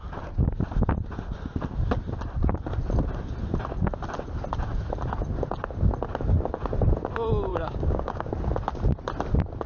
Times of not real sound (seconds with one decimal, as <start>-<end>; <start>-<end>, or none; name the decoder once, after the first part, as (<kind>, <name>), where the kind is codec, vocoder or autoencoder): 7.5-8.3 (codec, DAC)